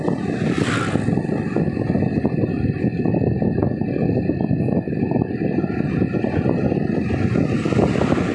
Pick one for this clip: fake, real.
real